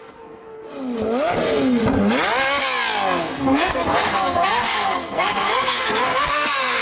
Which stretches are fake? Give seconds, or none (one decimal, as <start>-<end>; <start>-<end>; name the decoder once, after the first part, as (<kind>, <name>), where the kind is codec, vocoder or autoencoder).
0.0-0.6 (codec, SNAC); 1.4-1.8; 3.2-6.8